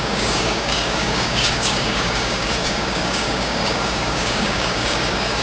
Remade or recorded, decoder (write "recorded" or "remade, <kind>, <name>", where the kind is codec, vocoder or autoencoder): remade, codec, DAC